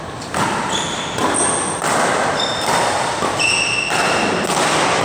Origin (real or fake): real